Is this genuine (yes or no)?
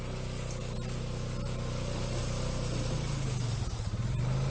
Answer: yes